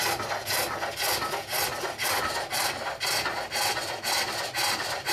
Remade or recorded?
recorded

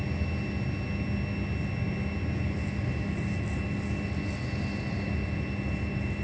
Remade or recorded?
recorded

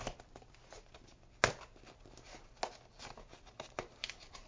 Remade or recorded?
recorded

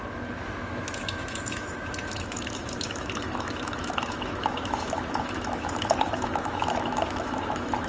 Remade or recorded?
remade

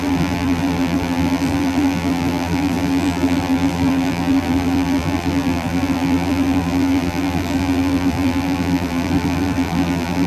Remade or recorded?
remade